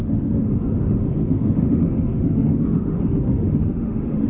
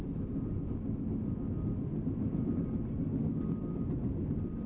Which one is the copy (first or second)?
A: first